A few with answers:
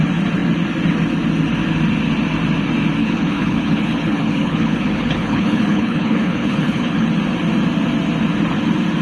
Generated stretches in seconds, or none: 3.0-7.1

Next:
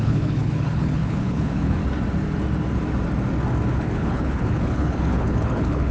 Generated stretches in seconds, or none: 0.0-1.8; 3.7-5.9

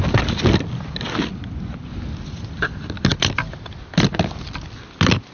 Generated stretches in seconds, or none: none

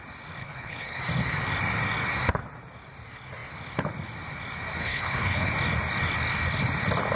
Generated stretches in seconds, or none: 0.4-1.0; 4.8-5.5

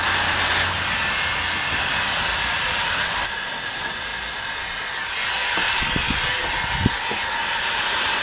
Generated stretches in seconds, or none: none

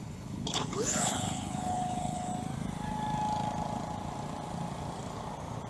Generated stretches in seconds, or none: 0.0-2.3